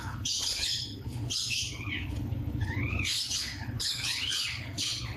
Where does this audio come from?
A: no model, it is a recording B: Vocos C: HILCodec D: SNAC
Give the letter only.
C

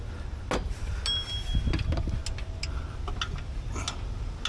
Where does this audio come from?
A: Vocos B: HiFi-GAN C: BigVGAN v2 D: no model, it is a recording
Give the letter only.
D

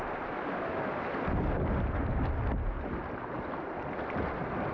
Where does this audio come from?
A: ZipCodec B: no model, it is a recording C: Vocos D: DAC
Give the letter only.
B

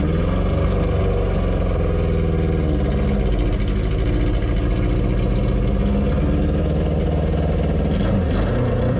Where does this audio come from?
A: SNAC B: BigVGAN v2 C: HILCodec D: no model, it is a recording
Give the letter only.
D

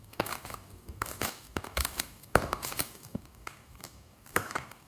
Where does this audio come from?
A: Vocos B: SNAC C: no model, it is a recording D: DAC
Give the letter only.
D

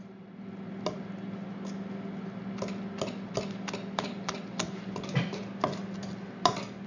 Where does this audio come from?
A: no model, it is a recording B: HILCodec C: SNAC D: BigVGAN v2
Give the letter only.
A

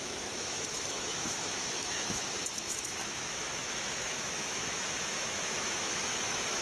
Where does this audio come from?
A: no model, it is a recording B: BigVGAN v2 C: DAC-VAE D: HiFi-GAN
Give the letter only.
C